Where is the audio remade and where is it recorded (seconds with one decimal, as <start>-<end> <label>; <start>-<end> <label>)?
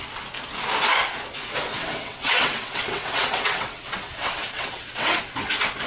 0.0-1.7 recorded; 1.7-5.2 remade; 5.2-5.9 recorded